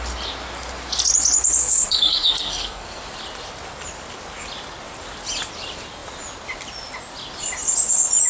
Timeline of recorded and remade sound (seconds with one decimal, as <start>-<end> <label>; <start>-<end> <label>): 0.0-1.6 recorded; 1.6-3.0 remade; 3.0-8.3 recorded